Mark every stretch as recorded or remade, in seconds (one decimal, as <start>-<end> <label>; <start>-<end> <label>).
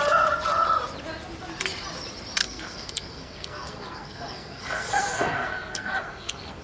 0.0-2.4 recorded; 2.4-6.6 remade